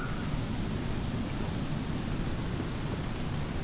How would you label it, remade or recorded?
recorded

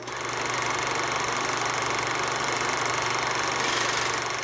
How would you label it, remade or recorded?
recorded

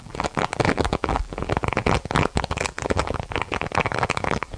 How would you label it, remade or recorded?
remade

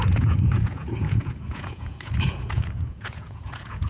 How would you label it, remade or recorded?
remade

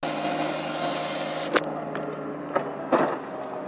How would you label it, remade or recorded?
recorded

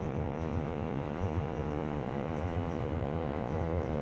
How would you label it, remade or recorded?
remade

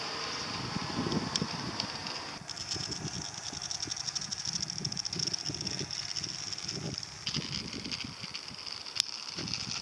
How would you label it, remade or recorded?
recorded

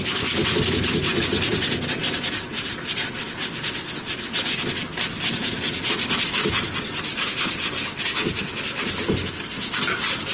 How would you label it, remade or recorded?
recorded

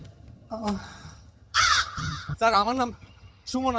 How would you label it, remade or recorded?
remade